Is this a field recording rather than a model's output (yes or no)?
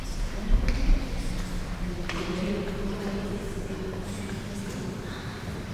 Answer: yes